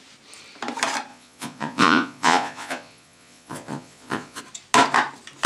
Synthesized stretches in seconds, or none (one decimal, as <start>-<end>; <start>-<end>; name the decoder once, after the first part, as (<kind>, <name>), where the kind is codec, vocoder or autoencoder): 1.1-4.4 (vocoder, Vocos)